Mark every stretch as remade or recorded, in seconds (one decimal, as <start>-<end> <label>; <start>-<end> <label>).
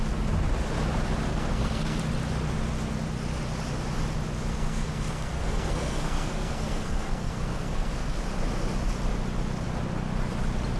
0.0-1.3 recorded; 1.3-2.0 remade; 2.0-4.5 recorded; 4.5-8.2 remade; 8.2-10.8 recorded